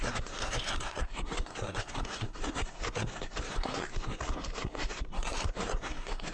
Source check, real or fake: fake